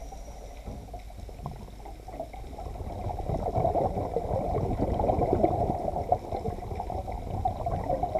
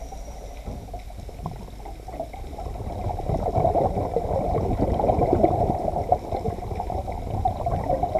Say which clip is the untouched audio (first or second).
first